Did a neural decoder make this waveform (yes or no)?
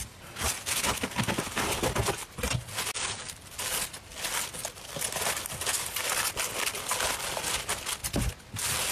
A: no